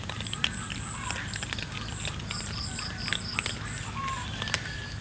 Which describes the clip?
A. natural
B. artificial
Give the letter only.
A